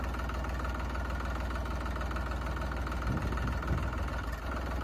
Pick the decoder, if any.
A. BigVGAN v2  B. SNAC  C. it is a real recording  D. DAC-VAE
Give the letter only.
C